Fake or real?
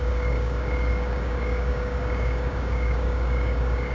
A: fake